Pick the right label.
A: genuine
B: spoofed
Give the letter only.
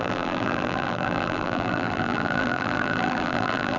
B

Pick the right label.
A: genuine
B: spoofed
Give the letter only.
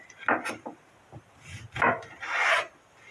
A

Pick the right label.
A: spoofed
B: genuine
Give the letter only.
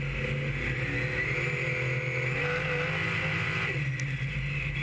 B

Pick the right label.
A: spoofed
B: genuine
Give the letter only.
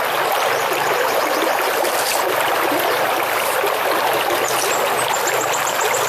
B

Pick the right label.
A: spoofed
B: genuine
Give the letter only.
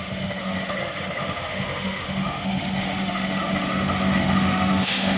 A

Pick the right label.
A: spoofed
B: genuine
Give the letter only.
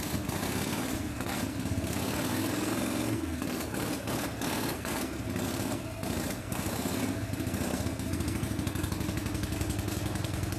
A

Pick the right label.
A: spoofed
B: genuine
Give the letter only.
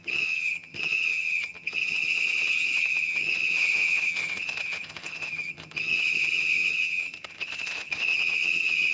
A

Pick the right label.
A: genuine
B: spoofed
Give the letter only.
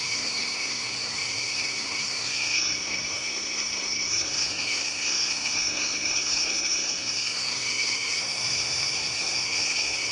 B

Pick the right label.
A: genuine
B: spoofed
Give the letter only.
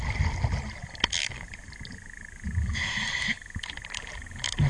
A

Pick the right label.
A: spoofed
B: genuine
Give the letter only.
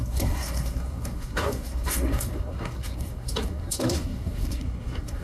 A